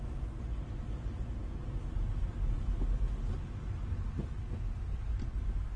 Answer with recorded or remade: recorded